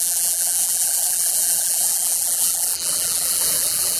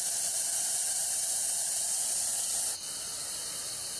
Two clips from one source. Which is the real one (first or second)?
second